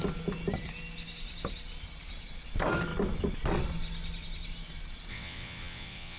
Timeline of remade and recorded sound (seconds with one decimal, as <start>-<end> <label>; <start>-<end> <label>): 0.0-5.1 recorded; 5.1-6.2 remade